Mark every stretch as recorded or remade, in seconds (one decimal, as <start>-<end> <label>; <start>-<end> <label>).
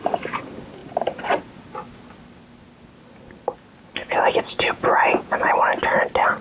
0.0-4.0 recorded; 4.0-5.5 remade; 5.5-6.4 recorded